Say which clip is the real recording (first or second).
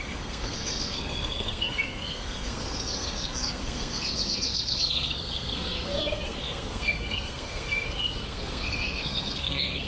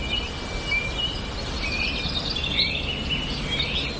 second